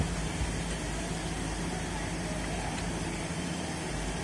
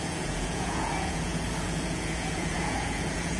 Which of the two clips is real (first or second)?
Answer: first